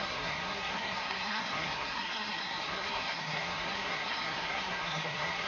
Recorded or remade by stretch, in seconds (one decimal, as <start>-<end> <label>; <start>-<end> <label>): 0.0-5.5 remade